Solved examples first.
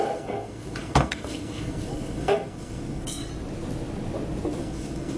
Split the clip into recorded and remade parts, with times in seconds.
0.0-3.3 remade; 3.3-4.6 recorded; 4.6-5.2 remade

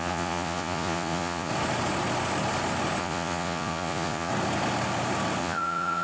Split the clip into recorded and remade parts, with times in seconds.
0.0-1.5 remade; 1.5-3.0 recorded; 3.0-4.3 remade; 4.3-5.4 recorded; 5.4-6.0 remade

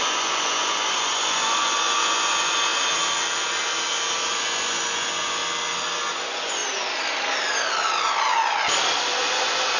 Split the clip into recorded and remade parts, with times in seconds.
0.0-2.7 remade; 2.7-4.3 recorded; 4.3-5.4 remade; 5.4-6.0 recorded; 6.0-6.6 remade; 6.6-9.2 recorded; 9.2-9.8 remade

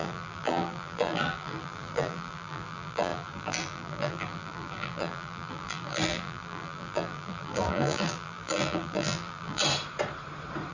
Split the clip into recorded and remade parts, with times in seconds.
0.0-9.6 remade; 9.6-10.7 recorded

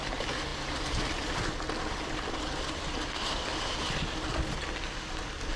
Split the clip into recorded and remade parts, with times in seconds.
0.0-5.6 recorded

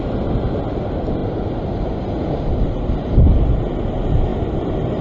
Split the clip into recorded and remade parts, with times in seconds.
0.0-5.0 recorded

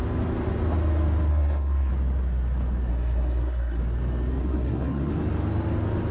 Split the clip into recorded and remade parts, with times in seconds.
0.0-1.3 recorded; 1.3-1.9 remade; 1.9-2.9 recorded; 2.9-3.8 remade; 3.8-4.4 recorded; 4.4-5.1 remade; 5.1-6.1 recorded

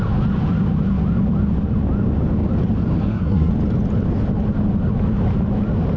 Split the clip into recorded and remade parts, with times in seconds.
0.0-3.0 recorded; 3.0-3.5 remade; 3.5-6.0 recorded